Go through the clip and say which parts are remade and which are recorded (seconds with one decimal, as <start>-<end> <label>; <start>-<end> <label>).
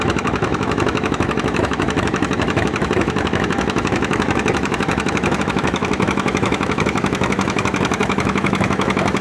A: 0.0-9.2 remade